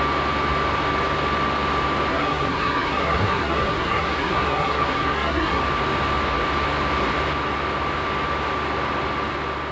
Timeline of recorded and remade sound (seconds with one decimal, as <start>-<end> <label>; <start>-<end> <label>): 0.0-2.1 recorded; 2.1-5.6 remade; 5.6-9.7 recorded